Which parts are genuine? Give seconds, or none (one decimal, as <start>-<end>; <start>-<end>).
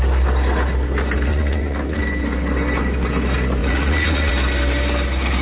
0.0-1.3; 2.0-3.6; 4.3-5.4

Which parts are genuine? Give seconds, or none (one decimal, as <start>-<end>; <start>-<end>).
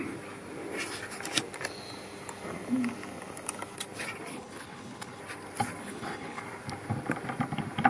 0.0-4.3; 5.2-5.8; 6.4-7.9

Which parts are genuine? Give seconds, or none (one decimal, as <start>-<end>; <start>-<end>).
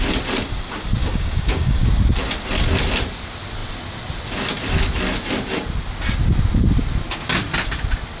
0.0-1.0; 1.9-8.2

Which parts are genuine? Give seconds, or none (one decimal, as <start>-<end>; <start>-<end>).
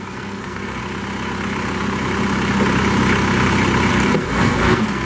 0.8-3.9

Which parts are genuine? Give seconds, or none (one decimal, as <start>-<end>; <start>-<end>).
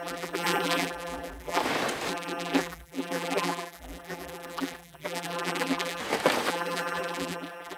1.6-2.1; 6.0-6.5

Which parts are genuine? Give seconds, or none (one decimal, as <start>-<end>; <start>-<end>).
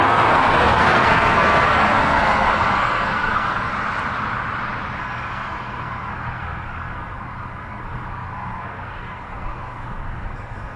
3.7-5.0